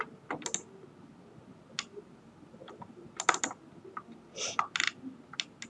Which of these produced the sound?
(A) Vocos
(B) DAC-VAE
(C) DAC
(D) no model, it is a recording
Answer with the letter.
D